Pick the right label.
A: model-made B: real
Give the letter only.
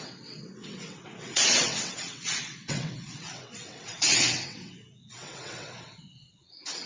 A